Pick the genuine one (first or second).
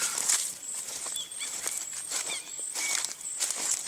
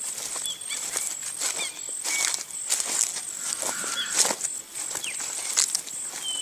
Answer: second